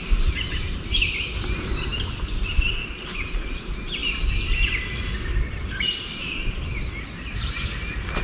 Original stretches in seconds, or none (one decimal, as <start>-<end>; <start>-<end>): 1.9-3.4